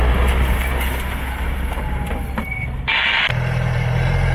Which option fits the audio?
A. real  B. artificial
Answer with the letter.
A